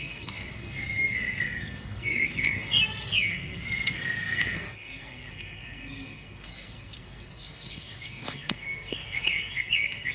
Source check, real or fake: fake